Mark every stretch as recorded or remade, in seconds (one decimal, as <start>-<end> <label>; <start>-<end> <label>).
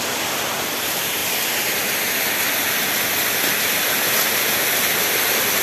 0.0-5.6 recorded